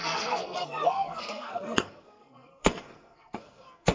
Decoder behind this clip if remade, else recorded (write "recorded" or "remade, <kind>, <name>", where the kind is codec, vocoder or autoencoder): remade, codec, SNAC